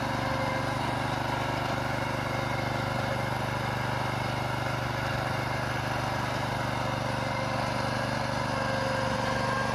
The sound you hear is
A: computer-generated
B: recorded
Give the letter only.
B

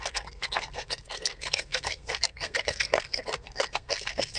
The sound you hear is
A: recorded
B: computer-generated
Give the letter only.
B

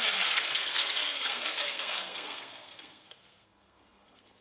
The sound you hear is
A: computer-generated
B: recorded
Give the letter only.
A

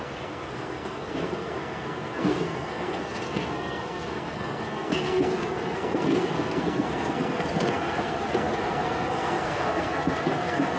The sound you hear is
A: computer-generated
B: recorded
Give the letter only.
A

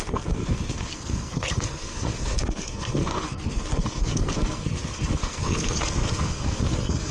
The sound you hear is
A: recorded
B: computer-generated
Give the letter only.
B